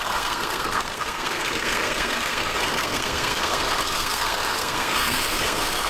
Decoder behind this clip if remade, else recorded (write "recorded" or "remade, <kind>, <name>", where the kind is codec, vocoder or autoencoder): remade, codec, SNAC